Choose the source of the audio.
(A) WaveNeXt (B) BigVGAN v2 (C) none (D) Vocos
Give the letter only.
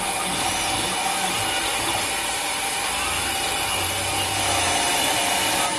C